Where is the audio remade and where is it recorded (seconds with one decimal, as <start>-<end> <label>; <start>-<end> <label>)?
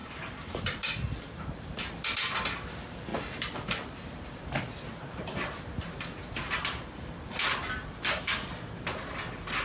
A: 0.0-1.7 remade; 1.7-3.1 recorded; 3.1-8.2 remade; 8.2-9.6 recorded